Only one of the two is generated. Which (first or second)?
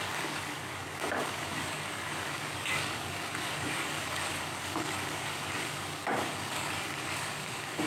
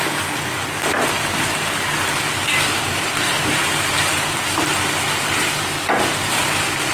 first